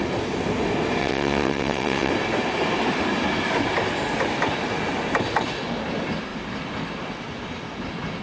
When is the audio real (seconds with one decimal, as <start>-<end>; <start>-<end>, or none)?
0.0-1.0; 2.1-8.2